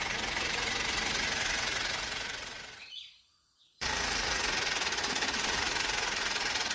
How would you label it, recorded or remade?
remade